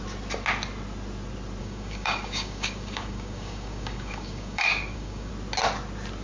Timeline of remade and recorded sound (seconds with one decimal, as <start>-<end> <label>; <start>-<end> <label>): 0.0-1.6 recorded; 1.6-5.3 remade; 5.3-6.2 recorded